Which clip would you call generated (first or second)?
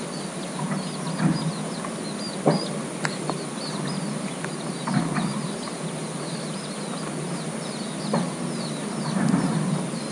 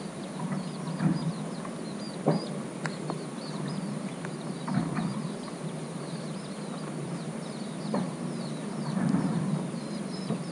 second